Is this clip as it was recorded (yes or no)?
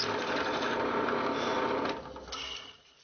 yes